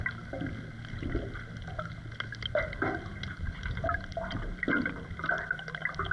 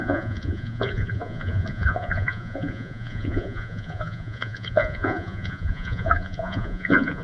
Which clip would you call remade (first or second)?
second